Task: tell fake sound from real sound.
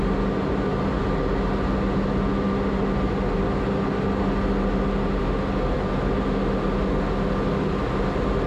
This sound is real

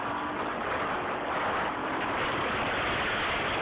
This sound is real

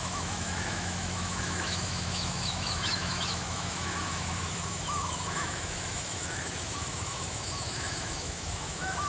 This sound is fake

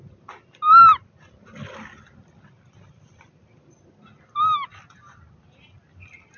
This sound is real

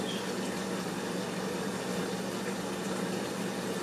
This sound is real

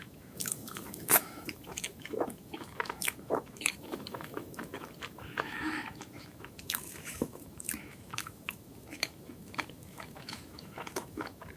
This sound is fake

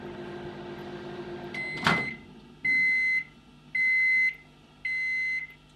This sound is real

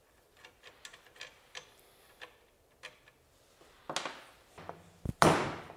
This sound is real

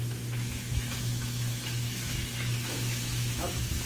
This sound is fake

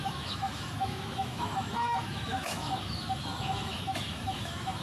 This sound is fake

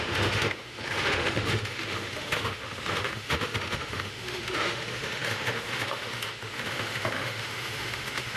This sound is fake